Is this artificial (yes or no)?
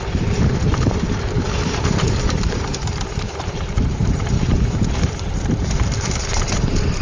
yes